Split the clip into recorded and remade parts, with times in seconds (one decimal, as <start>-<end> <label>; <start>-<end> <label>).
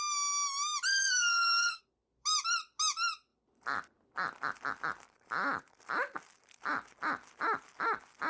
0.0-0.9 recorded; 0.9-1.8 remade; 1.8-8.3 recorded